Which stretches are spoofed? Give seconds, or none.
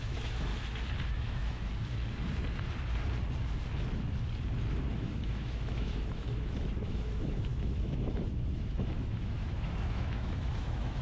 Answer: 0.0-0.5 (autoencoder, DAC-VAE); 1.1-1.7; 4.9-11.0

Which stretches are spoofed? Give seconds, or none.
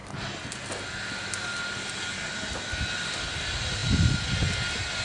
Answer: none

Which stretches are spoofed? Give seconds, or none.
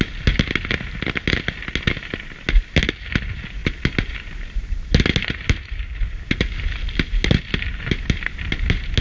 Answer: none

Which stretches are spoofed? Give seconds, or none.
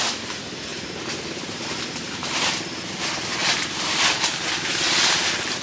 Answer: 0.7-2.9 (vocoder, BigVGAN v2); 3.4-4.0